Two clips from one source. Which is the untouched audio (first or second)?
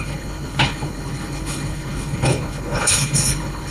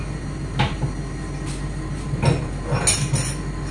second